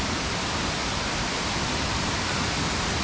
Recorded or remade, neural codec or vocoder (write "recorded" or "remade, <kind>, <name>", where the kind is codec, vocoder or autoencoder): remade, vocoder, BigVGAN v2